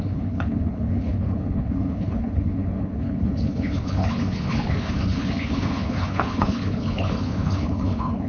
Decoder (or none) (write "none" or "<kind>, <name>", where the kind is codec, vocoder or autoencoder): codec, HILCodec